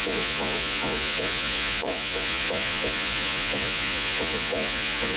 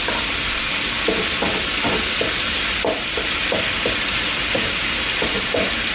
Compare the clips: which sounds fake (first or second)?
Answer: first